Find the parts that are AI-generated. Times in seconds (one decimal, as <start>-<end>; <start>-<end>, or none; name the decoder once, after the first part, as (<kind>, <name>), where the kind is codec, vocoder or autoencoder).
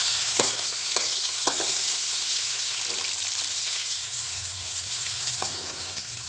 0.0-2.8 (codec, SNAC); 3.5-6.3